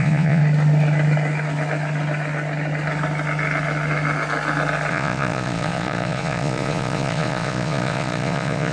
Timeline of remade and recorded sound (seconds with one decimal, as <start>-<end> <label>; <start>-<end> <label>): 0.0-0.4 remade; 0.4-4.9 recorded; 4.9-8.7 remade